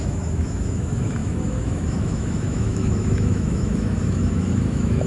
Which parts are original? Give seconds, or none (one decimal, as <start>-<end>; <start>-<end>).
none

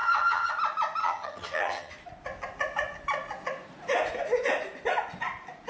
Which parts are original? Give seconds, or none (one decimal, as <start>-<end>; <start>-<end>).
0.5-1.0; 1.9-5.7